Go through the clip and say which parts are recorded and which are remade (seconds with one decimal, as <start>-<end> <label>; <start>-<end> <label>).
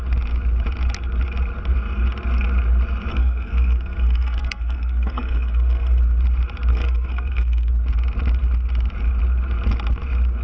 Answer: 0.0-3.1 recorded; 3.1-6.0 remade; 6.0-6.7 recorded; 6.7-7.7 remade; 7.7-10.4 recorded